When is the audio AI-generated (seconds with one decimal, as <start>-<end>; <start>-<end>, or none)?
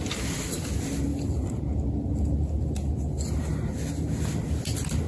none